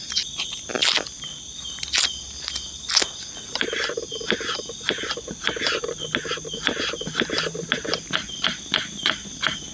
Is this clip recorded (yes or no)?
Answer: yes